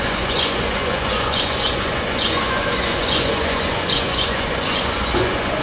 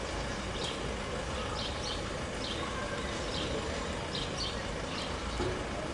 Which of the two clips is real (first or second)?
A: second